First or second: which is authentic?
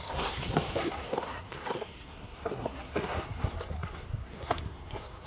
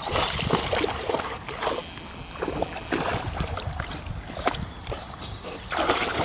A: second